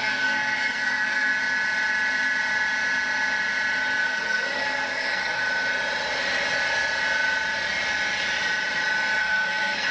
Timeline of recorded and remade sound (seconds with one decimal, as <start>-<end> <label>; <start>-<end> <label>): 0.0-1.3 remade; 1.3-4.0 recorded; 4.0-5.4 remade; 5.4-9.2 recorded; 9.2-9.9 remade